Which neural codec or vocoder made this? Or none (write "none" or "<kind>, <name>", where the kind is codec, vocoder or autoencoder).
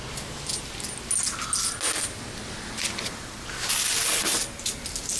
none